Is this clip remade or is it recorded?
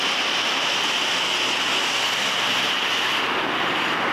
recorded